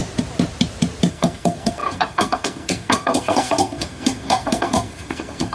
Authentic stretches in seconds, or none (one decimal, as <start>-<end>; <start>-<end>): 0.0-1.1